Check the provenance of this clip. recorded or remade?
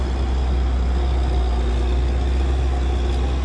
recorded